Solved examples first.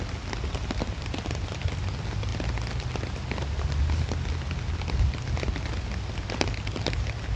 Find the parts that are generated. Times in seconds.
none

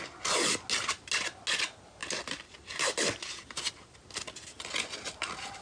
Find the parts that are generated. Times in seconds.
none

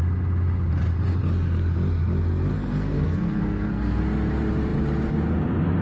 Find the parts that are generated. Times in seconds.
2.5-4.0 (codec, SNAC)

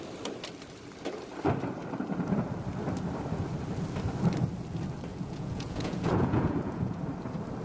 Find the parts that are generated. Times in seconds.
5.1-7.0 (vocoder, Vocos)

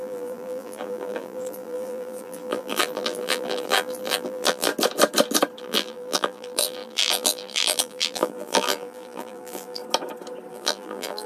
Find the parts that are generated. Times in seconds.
0.0-4.7 (vocoder, BigVGAN v2); 5.6-9.8; 10.5-11.3

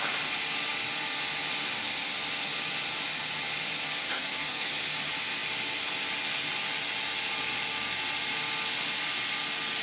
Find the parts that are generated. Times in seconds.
4.1-4.7 (codec, SNAC)

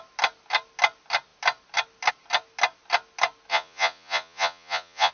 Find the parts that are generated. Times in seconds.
3.5-5.1 (vocoder, Vocos)

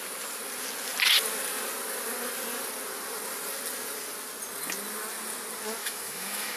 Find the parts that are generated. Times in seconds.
5.8-6.6 (autoencoder, DAC-VAE)